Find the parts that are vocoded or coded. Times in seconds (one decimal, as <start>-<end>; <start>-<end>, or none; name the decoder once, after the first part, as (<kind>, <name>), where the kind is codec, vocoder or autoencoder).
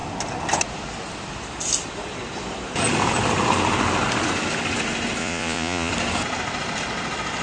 5.2-5.9 (vocoder, Vocos)